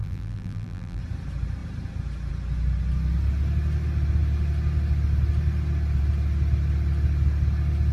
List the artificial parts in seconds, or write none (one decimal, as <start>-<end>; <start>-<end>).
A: 0.0-1.0